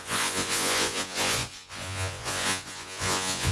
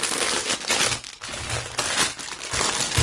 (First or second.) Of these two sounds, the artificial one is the first